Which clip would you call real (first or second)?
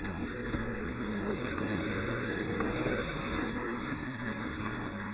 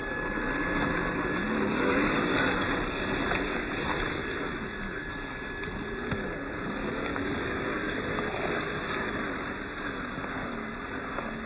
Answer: second